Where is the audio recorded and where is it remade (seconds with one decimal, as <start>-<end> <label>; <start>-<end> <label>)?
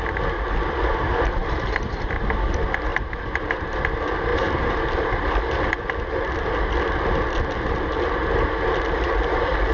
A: 0.0-1.4 recorded; 1.4-2.2 remade; 2.2-2.9 recorded; 2.9-3.8 remade; 3.8-4.3 recorded; 4.3-5.4 remade; 5.4-9.7 recorded